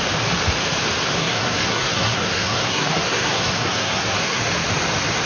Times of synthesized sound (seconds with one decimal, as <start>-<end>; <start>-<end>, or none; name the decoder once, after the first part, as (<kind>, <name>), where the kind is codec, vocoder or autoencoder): 1.2-4.4 (codec, SNAC)